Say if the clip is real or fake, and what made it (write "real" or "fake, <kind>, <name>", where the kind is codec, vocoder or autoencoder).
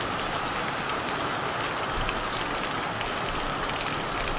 real